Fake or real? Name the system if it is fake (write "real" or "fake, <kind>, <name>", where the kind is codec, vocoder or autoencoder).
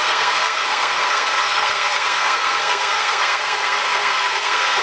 fake, codec, SNAC